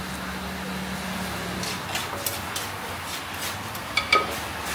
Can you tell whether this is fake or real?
real